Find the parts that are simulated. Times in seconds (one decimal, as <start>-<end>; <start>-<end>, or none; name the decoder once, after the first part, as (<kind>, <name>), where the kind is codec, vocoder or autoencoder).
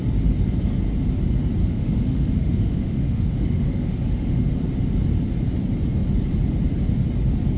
1.6-4.5 (autoencoder, DAC-VAE)